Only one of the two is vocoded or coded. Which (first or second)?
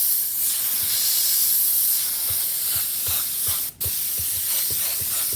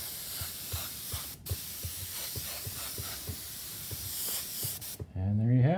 second